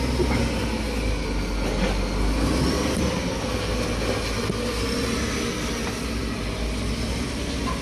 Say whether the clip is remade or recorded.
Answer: recorded